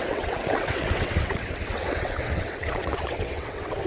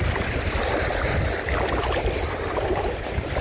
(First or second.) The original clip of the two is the second